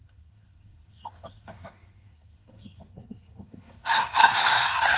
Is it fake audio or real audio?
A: fake